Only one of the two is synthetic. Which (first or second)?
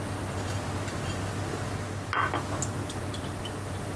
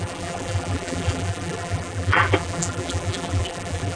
second